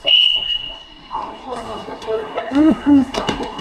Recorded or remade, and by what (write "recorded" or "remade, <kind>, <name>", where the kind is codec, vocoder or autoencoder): remade, codec, SNAC